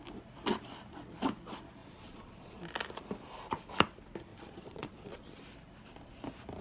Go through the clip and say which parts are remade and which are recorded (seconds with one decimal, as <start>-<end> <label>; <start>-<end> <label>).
0.0-1.8 recorded; 1.8-2.6 remade; 2.6-4.3 recorded; 4.3-5.1 remade; 5.1-6.6 recorded